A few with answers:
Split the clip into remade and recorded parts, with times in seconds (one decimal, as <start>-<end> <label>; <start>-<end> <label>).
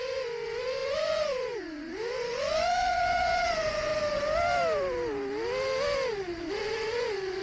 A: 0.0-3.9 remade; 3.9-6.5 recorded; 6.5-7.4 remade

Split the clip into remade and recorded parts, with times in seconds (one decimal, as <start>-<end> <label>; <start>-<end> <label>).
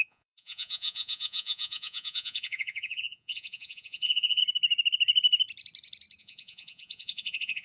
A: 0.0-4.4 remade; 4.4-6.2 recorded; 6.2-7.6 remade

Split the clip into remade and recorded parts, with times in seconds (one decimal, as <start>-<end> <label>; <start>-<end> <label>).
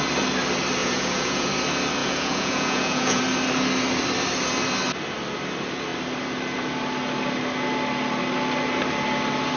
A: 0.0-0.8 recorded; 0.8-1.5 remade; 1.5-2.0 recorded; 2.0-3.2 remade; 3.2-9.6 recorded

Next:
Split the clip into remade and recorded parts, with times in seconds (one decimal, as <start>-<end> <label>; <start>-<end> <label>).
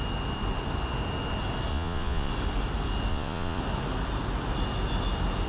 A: 0.0-1.7 recorded; 1.7-2.3 remade; 2.3-3.1 recorded; 3.1-3.6 remade; 3.6-5.5 recorded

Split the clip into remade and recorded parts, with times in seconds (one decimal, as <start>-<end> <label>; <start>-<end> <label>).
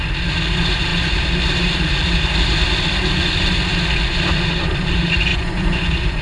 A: 0.0-5.3 recorded; 5.3-6.2 remade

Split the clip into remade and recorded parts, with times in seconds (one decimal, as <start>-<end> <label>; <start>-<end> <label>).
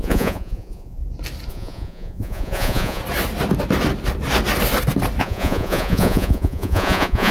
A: 0.0-1.0 remade; 1.0-1.5 recorded; 1.5-3.0 remade; 3.0-5.2 recorded; 5.2-7.3 remade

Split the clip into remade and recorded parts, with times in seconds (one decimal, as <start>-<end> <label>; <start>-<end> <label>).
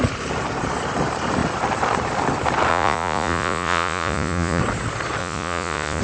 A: 0.0-2.7 recorded; 2.7-4.6 remade; 4.6-5.2 recorded; 5.2-6.0 remade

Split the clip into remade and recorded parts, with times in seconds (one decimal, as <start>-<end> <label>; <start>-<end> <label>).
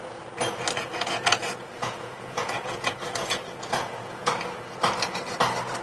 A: 0.0-0.8 recorded; 0.8-4.3 remade; 4.3-5.8 recorded